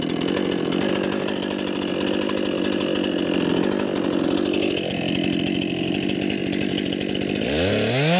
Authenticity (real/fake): real